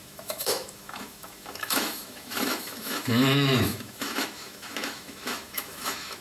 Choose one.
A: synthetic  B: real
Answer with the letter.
A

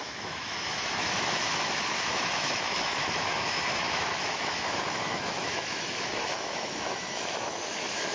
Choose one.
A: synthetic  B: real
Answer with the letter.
A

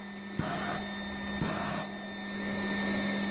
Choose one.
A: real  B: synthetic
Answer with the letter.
A